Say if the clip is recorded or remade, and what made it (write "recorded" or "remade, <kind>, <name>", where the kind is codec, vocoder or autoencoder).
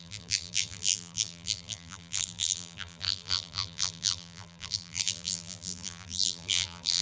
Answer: remade, vocoder, BigVGAN v2